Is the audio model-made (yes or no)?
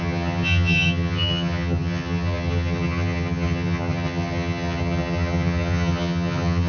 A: yes